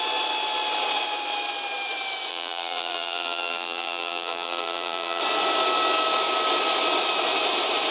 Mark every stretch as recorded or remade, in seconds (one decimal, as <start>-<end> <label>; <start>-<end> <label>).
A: 0.0-2.3 recorded; 2.3-5.2 remade; 5.2-7.9 recorded